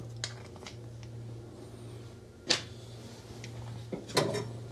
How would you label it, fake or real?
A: real